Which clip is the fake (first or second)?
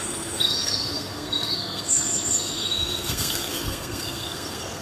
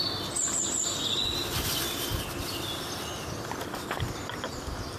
first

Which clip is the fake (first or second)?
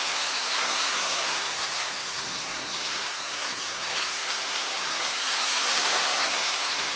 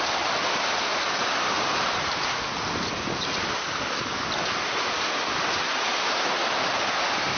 first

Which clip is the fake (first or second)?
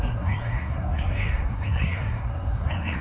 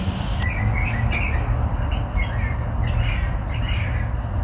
first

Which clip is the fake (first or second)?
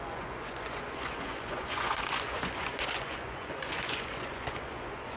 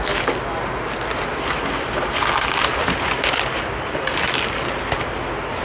first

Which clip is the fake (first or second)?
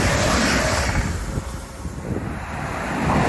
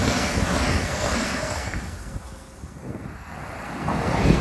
second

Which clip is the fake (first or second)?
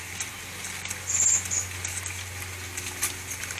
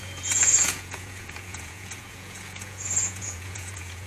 second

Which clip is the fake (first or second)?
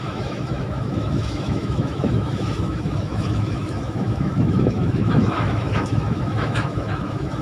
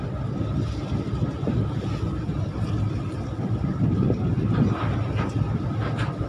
first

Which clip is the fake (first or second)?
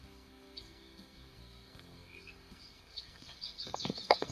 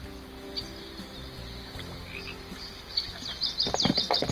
first